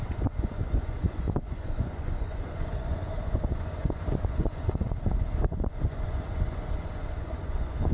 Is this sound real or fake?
fake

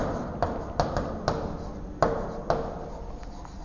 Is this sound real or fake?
real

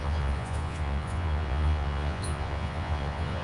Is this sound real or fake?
fake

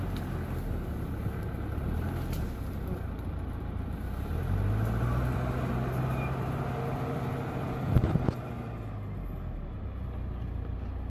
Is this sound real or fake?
real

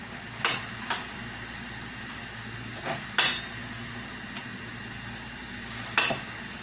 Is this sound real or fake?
real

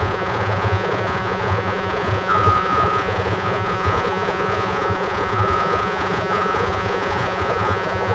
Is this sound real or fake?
fake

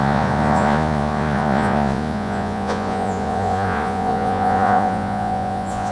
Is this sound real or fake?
fake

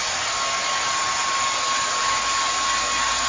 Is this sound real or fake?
real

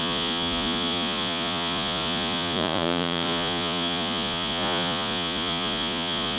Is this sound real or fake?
fake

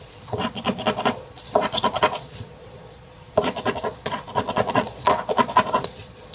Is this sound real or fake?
fake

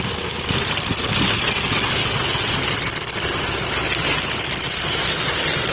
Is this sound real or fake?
real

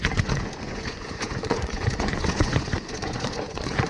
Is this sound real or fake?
fake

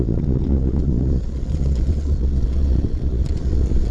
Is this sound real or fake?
fake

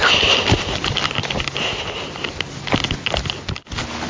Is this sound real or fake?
real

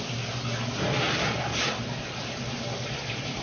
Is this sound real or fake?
real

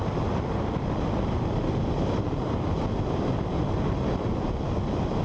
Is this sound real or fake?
real